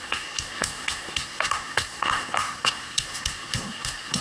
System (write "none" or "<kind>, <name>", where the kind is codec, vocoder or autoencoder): codec, SNAC